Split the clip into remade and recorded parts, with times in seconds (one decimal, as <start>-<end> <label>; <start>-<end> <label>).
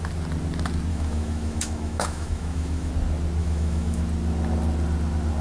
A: 0.0-0.9 recorded; 0.9-2.9 remade; 2.9-3.4 recorded; 3.4-4.0 remade; 4.0-5.4 recorded